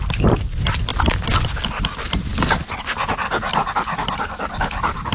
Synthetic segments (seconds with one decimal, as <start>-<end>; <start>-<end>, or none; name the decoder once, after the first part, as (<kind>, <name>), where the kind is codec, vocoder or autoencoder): none

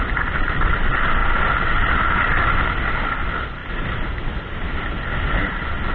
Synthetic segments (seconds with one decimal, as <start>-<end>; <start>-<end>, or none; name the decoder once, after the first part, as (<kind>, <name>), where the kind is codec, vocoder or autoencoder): none

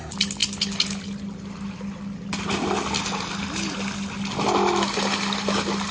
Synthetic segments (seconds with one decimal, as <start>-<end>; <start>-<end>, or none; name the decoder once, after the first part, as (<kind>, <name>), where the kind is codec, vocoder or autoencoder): none